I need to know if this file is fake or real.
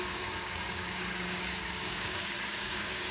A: fake